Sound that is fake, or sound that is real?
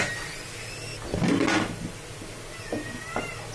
real